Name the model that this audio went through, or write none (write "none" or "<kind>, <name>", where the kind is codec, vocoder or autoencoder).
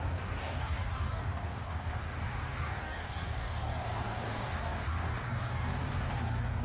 codec, DAC